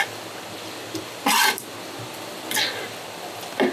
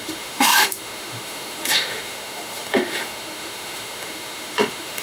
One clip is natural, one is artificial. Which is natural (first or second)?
first